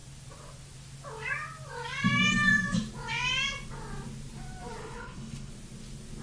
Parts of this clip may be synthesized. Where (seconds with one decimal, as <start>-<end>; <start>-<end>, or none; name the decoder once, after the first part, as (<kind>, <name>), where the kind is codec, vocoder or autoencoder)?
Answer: 4.8-5.5 (codec, HILCodec)